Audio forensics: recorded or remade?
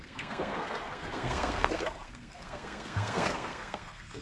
remade